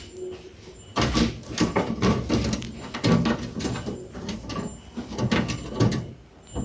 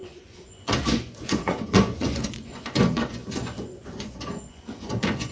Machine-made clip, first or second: second